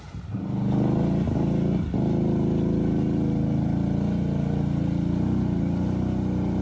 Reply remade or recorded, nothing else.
recorded